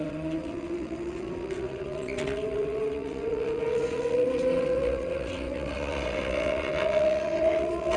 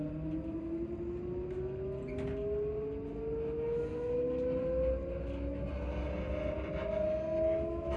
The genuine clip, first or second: second